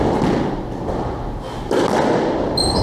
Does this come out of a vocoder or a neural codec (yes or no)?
no